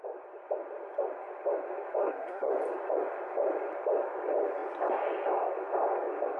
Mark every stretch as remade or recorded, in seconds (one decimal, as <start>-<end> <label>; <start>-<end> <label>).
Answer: 0.0-2.0 recorded; 2.0-2.5 remade; 2.5-6.4 recorded